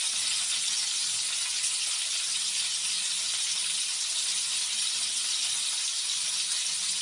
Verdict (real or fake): real